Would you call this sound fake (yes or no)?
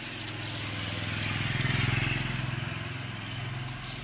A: no